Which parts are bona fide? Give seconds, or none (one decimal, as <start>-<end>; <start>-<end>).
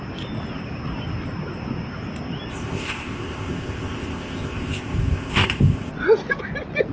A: 0.0-2.5; 5.9-6.9